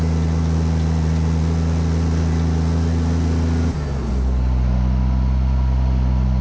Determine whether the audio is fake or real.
real